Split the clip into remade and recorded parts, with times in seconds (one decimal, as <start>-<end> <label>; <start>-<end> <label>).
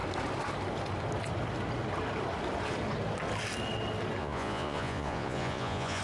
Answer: 0.0-4.2 recorded; 4.2-6.0 remade